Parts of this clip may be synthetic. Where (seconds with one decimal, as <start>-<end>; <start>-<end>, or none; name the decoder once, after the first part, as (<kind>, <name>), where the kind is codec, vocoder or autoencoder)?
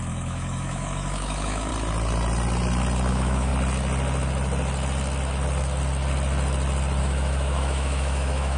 0.0-1.7 (autoencoder, DAC-VAE); 3.1-3.5; 7.0-8.6